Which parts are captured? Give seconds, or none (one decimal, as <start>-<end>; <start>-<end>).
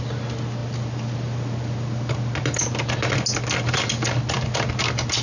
0.0-5.2